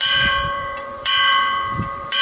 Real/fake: fake